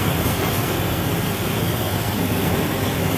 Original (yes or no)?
no